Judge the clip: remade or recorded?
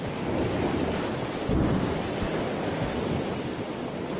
recorded